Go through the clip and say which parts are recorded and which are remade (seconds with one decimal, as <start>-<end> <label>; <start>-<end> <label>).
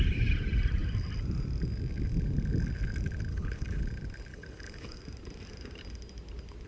0.0-3.3 recorded; 3.3-3.8 remade; 3.8-4.3 recorded; 4.3-5.0 remade; 5.0-6.7 recorded